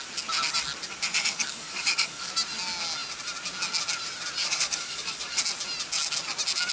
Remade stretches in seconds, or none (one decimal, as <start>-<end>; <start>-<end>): 1.1-2.3; 4.4-5.4